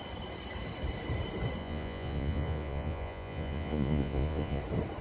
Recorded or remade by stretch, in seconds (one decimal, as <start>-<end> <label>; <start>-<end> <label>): 0.0-1.6 recorded; 1.6-4.6 remade; 4.6-5.0 recorded